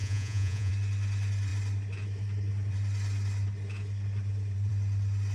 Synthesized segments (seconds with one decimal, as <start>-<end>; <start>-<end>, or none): 0.0-0.7